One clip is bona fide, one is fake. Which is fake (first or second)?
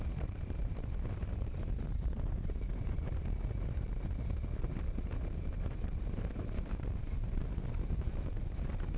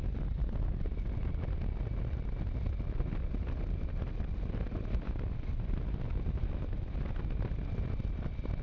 first